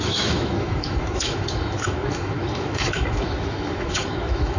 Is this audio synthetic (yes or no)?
yes